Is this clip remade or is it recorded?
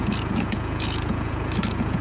remade